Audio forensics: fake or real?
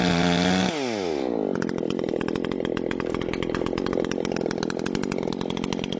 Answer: real